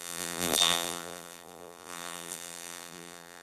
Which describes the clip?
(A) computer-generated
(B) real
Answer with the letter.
A